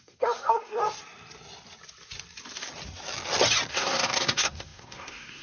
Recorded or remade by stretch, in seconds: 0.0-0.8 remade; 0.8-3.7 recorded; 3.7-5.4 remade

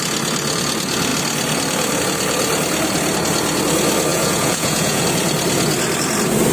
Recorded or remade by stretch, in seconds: 0.0-4.1 recorded; 4.1-5.0 remade; 5.0-6.5 recorded

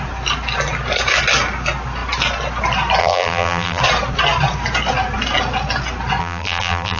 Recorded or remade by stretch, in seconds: 0.0-3.0 recorded; 3.0-3.8 remade; 3.8-6.2 recorded; 6.2-7.0 remade

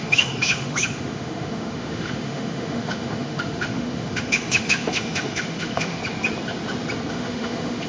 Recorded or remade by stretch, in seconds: 0.0-6.0 remade; 6.0-7.1 recorded; 7.1-7.9 remade

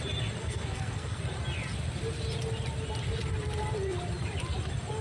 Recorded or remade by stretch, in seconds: 0.0-0.4 recorded; 0.4-1.2 remade; 1.2-5.0 recorded

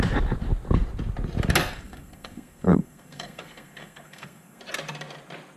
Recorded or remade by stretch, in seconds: 0.0-1.6 recorded; 1.6-4.6 remade; 4.6-5.6 recorded

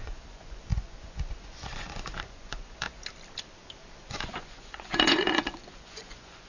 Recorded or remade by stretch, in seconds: 0.0-3.0 remade; 3.0-4.0 recorded; 4.0-6.5 remade